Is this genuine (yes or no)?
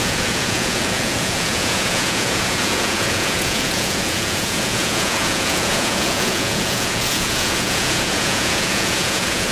no